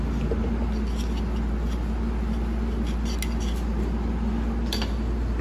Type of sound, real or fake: real